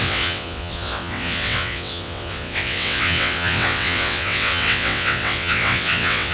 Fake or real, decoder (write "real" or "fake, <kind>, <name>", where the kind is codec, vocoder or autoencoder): fake, vocoder, WaveNeXt